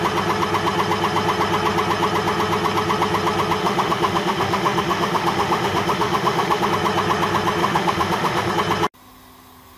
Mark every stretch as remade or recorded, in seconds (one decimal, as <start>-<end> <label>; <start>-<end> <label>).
0.0-3.6 recorded; 3.6-6.7 remade; 6.7-7.6 recorded; 7.6-8.5 remade; 8.5-9.8 recorded

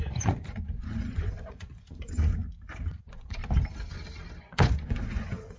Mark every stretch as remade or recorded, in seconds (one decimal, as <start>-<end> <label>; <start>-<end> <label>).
0.0-2.4 remade; 2.4-3.0 recorded; 3.0-3.4 remade; 3.4-4.4 recorded; 4.4-5.6 remade

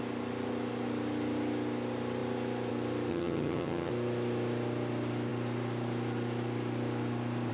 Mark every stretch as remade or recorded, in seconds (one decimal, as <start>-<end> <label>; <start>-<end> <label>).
0.0-3.1 recorded; 3.1-3.9 remade; 3.9-7.5 recorded